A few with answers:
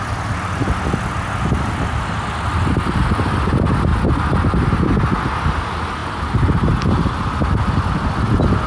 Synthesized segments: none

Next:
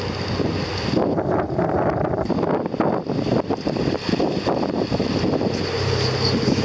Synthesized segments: 0.7-4.7 (vocoder, BigVGAN v2)

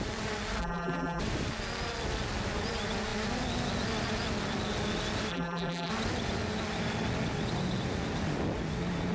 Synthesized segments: 0.6-1.2 (vocoder, BigVGAN v2); 5.3-5.9

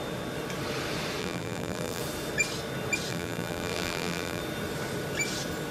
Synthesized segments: 1.2-2.0 (vocoder, BigVGAN v2); 3.1-4.4

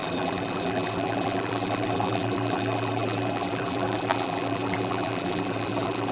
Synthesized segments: 0.0-6.1 (vocoder, BigVGAN v2)

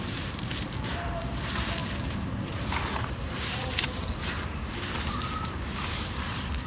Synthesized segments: 0.0-6.7 (vocoder, BigVGAN v2)